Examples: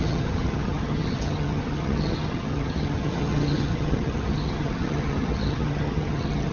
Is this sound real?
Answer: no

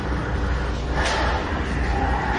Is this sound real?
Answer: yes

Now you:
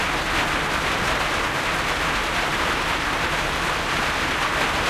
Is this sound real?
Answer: yes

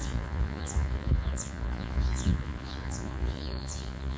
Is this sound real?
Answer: no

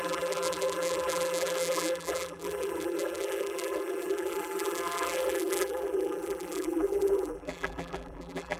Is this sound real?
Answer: no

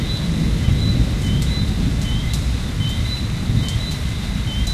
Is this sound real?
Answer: yes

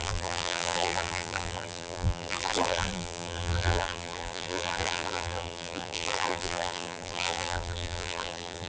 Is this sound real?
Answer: no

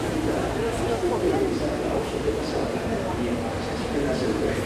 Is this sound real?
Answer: yes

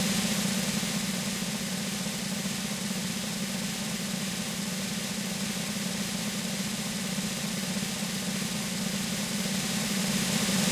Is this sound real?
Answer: yes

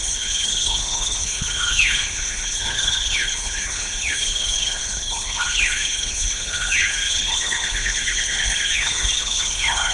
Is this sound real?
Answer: no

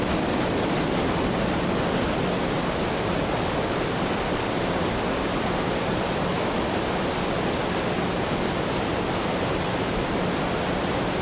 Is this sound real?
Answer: yes